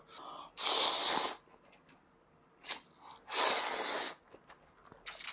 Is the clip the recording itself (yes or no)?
yes